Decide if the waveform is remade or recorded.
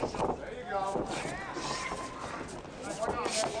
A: recorded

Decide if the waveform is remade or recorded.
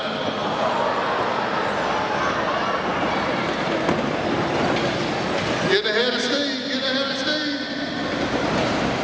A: recorded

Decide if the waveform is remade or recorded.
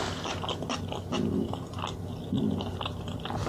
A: recorded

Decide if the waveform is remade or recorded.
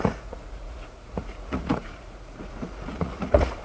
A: remade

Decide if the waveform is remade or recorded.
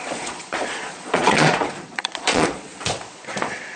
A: remade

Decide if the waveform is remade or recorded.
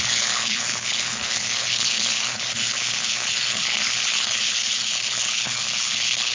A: remade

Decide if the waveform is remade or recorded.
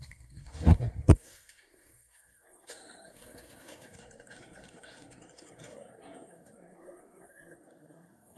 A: remade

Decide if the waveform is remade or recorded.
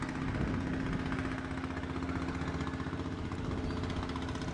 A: recorded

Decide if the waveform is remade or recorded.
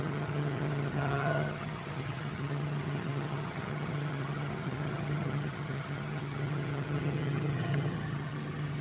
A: remade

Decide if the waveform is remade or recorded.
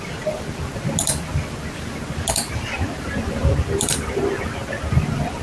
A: recorded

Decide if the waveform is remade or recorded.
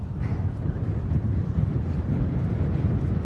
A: recorded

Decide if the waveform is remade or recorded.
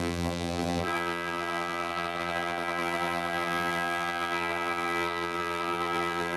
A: remade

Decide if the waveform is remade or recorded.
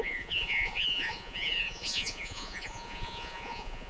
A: remade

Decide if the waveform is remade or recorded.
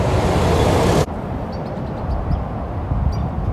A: recorded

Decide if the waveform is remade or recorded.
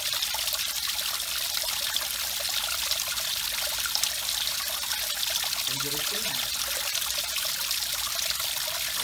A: recorded